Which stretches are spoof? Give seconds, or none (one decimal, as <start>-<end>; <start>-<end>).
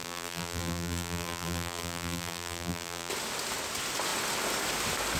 0.0-3.1